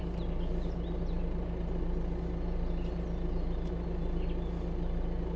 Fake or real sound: real